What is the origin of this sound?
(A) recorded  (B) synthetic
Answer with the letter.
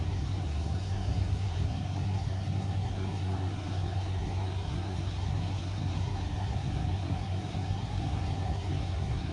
B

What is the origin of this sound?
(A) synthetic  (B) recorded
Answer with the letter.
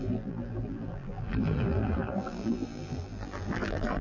A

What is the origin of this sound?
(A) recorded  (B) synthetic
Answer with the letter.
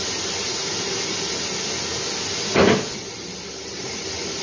A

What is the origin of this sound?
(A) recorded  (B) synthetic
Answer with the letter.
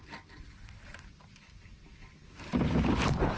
A